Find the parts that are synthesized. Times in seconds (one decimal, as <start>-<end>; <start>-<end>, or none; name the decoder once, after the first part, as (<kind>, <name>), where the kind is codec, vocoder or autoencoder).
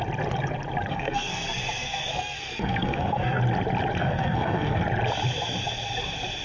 0.9-3.4 (codec, SNAC); 4.0-4.8